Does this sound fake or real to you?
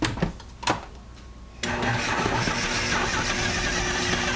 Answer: real